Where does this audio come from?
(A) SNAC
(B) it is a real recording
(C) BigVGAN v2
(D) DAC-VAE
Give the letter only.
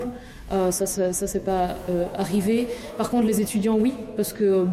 D